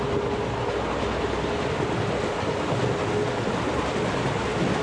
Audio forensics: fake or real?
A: real